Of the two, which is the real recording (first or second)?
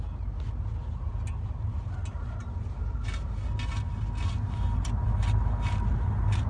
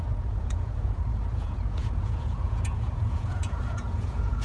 first